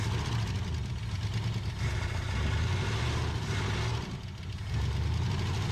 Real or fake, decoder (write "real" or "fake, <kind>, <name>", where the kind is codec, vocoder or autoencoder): real